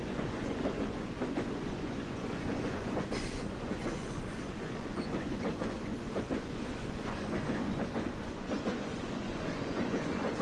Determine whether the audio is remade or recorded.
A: remade